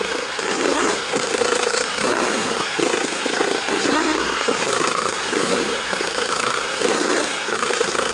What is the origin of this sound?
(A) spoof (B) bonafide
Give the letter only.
A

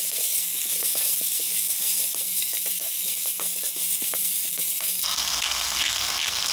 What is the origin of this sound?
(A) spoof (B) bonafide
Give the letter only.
A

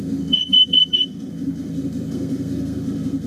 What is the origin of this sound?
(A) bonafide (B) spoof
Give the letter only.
B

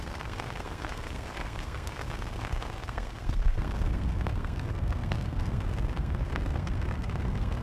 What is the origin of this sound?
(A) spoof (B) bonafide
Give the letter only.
A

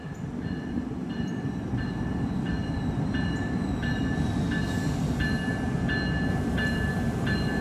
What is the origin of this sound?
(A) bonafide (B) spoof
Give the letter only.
A